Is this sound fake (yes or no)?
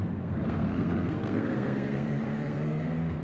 yes